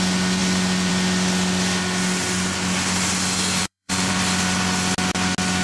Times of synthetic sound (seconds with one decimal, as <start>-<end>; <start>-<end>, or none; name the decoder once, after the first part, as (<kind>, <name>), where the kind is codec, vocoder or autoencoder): 3.6-4.1 (vocoder, Vocos)